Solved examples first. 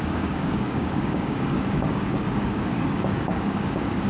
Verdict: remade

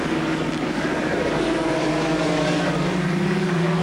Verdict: remade